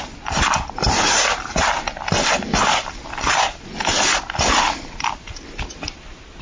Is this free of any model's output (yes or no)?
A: yes